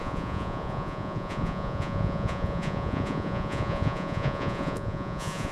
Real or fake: fake